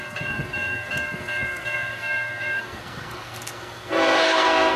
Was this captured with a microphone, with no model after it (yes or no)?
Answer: no